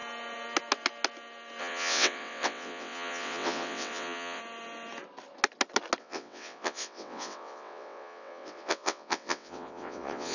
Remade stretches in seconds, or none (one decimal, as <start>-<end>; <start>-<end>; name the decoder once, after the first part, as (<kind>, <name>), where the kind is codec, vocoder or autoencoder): 1.6-4.4 (vocoder, WaveNeXt); 6.0-10.3